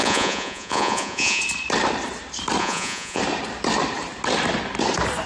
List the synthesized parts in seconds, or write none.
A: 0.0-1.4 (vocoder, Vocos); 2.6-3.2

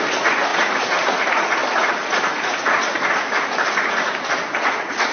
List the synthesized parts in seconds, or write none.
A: 0.0-5.1 (vocoder, Vocos)

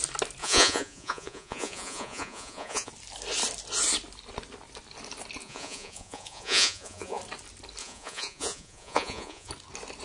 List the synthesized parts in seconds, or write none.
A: 0.4-2.9 (vocoder, Vocos); 5.4-7.2; 7.8-9.5